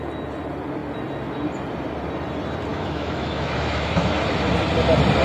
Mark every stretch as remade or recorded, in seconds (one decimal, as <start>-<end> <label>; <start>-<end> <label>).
0.0-2.7 recorded; 2.7-4.1 remade; 4.1-5.2 recorded